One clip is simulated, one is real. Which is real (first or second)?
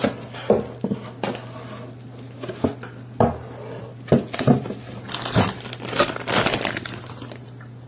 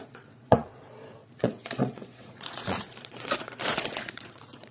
first